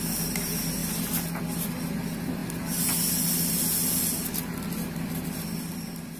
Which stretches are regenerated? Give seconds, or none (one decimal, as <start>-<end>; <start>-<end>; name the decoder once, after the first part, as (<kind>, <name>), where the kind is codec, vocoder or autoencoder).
none

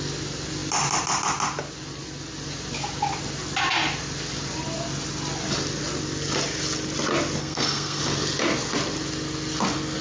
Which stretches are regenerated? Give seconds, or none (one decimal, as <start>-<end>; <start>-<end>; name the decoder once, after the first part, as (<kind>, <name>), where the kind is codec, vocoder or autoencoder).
7.4-8.0 (codec, SNAC)

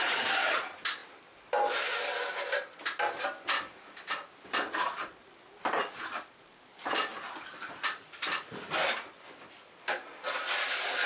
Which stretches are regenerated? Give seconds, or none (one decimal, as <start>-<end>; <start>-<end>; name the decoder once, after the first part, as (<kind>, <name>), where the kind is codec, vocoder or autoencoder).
6.7-8.9 (vocoder, BigVGAN v2)

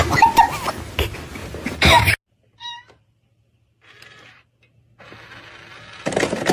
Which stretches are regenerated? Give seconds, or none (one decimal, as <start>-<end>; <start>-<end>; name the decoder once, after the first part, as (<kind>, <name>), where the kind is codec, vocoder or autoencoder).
none

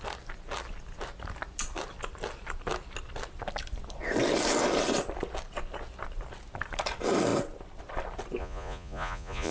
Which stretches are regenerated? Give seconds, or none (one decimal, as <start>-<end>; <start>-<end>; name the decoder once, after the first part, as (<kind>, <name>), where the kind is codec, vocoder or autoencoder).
8.4-9.5 (vocoder, Vocos)

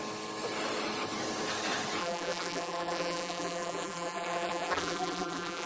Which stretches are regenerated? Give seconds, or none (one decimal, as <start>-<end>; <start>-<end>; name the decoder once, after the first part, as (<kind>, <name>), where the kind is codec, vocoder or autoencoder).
2.0-5.7 (vocoder, BigVGAN v2)

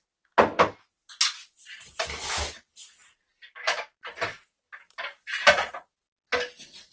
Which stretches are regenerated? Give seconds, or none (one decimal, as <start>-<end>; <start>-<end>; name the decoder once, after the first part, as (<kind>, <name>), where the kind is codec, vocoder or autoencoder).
3.0-4.6 (vocoder, BigVGAN v2)

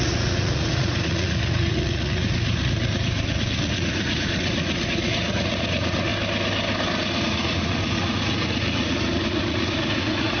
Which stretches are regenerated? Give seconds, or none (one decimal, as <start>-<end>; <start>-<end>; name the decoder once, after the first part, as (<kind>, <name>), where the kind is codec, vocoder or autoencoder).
0.0-6.1 (vocoder, Vocos); 7.2-10.4